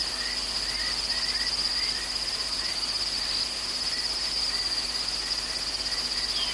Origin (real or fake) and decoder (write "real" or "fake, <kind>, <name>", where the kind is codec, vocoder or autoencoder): real